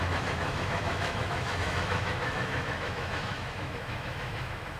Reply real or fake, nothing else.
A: fake